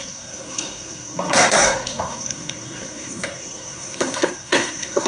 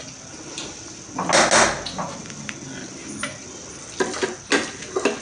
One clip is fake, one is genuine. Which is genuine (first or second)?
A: second